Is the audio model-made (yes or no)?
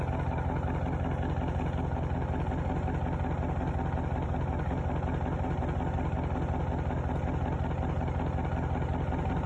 no